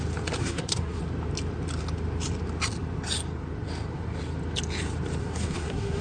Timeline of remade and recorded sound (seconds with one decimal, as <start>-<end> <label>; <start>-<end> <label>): 0.0-0.4 recorded; 0.4-1.0 remade; 1.0-5.2 recorded; 5.2-6.0 remade